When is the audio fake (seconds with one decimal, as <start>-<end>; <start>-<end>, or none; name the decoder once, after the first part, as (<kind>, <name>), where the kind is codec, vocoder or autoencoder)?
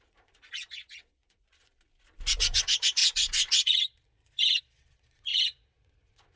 0.0-1.7 (vocoder, Vocos); 2.4-6.4